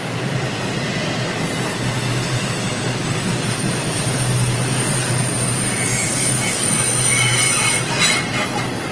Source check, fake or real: real